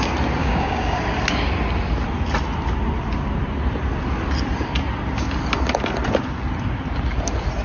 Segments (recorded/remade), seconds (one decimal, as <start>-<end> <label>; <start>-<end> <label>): 0.0-0.4 recorded; 0.4-1.0 remade; 1.0-7.6 recorded